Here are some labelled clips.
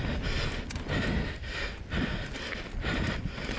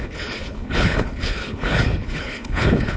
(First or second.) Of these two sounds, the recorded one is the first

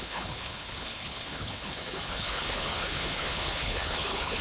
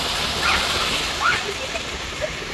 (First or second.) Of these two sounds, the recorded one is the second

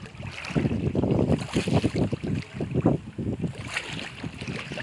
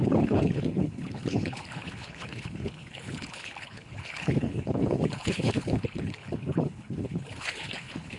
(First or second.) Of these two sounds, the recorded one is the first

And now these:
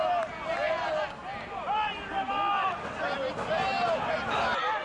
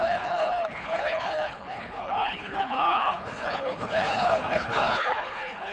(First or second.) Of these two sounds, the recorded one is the first